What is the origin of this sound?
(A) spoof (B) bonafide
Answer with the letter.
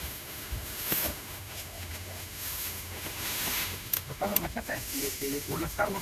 A